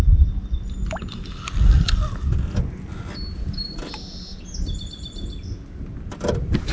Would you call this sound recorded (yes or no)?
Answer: yes